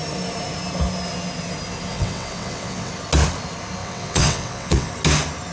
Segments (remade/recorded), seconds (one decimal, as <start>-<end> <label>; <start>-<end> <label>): 0.0-1.9 recorded; 1.9-2.9 remade; 2.9-3.8 recorded; 3.8-4.9 remade; 4.9-5.5 recorded